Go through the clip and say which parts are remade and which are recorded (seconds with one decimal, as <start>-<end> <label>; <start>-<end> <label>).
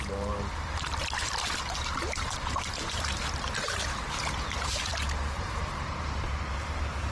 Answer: 0.0-1.0 remade; 1.0-2.1 recorded; 2.1-4.9 remade; 4.9-5.6 recorded; 5.6-7.1 remade